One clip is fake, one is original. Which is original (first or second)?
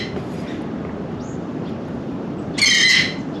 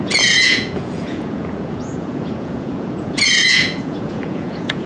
first